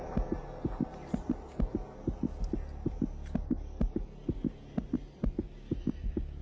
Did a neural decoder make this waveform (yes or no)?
no